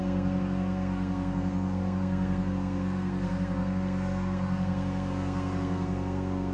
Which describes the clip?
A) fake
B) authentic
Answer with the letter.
A